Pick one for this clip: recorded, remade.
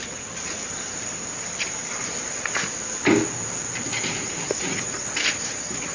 recorded